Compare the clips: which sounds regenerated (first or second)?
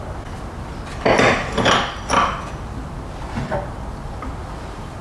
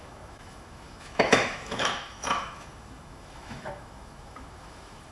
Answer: second